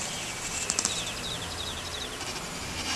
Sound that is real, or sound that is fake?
real